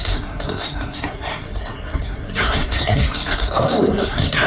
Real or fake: fake